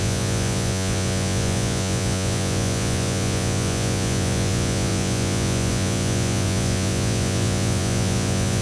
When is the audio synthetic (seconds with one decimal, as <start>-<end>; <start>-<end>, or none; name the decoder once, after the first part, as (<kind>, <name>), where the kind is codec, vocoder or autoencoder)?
0.0-8.6 (vocoder, Vocos)